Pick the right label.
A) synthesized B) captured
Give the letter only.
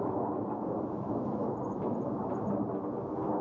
B